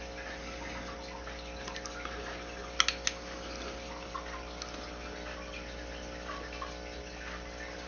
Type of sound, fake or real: real